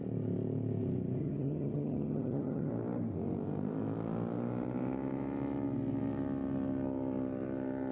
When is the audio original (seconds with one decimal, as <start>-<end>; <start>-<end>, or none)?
0.0-1.2; 2.7-7.9